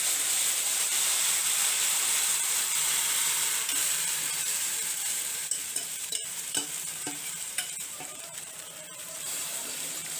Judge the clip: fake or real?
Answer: fake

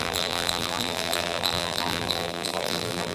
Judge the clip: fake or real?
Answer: fake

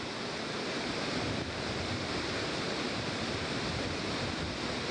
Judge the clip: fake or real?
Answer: fake